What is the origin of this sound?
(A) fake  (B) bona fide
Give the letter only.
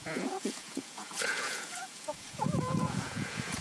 A